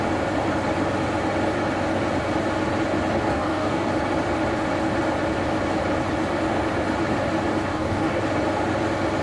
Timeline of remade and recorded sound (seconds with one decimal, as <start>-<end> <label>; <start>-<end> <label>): 0.0-3.3 recorded; 3.3-3.9 remade; 3.9-7.7 recorded; 7.7-8.2 remade; 8.2-9.2 recorded